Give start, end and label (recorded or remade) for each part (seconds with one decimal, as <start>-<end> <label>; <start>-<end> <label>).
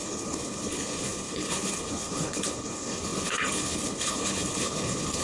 0.0-5.2 remade